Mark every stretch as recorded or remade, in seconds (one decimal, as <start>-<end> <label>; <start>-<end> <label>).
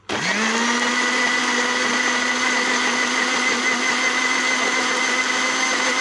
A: 0.0-6.0 recorded